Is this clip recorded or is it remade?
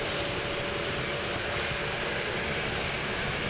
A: recorded